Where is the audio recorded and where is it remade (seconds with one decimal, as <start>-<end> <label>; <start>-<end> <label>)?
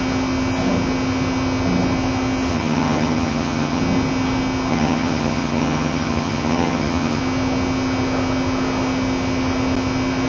0.0-2.5 recorded; 2.5-3.8 remade; 3.8-4.7 recorded; 4.7-7.2 remade; 7.2-10.3 recorded